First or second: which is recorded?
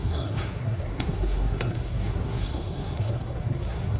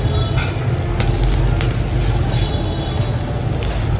second